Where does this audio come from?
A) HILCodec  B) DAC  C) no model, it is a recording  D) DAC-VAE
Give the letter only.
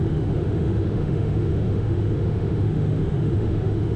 D